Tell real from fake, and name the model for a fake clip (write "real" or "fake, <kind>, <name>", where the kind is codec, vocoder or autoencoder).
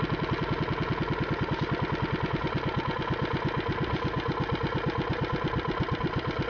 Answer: real